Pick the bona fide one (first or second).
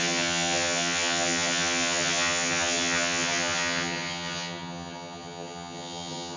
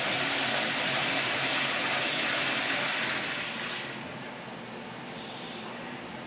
second